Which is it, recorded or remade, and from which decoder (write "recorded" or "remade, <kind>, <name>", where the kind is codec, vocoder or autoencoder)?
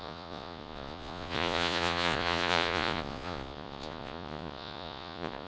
remade, vocoder, Vocos